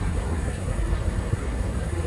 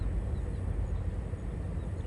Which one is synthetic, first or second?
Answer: first